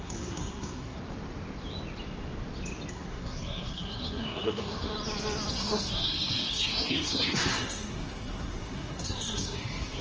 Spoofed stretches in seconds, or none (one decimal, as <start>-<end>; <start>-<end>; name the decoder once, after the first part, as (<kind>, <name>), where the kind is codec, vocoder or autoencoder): 0.0-1.0 (codec, SNAC); 2.9-4.9; 5.5-10.0